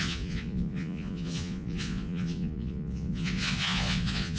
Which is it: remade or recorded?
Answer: remade